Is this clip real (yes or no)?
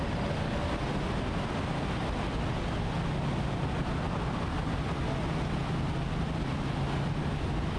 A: yes